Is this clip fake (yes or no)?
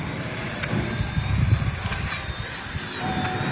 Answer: no